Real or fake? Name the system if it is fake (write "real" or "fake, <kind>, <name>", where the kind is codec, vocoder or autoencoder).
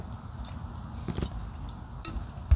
real